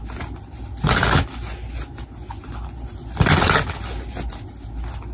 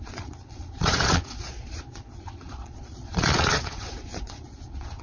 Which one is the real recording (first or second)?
first